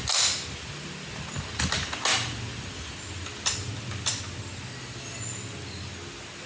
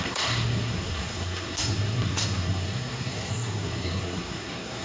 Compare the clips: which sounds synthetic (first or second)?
second